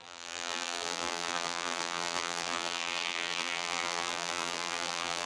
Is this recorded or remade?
remade